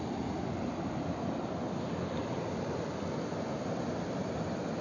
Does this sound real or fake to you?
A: real